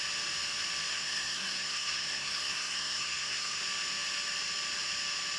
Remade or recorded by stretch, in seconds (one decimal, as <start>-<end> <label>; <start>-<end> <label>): 0.0-0.9 recorded; 0.9-3.6 remade; 3.6-5.4 recorded